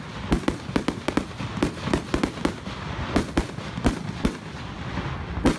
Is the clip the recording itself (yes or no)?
yes